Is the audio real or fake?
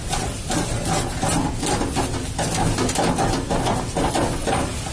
real